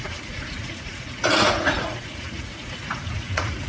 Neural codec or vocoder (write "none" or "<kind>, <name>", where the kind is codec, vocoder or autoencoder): vocoder, Vocos